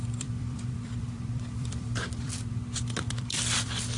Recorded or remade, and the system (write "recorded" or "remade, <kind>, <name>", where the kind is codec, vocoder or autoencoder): remade, vocoder, BigVGAN v2